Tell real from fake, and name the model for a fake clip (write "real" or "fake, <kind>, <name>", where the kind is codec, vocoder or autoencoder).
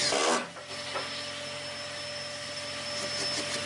real